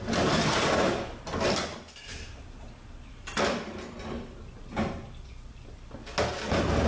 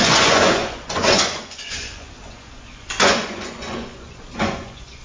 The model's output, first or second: second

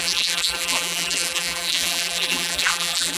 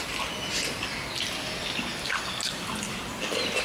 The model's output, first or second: first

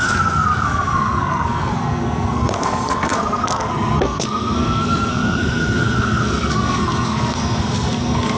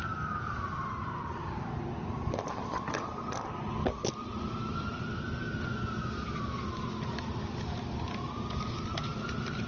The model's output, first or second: first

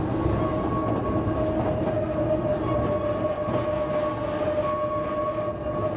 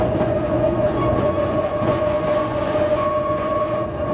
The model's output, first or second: second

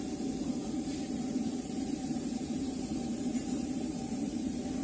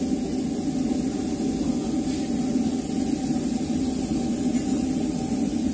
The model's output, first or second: first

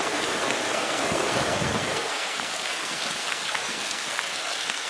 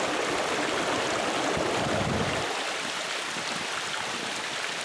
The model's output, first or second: first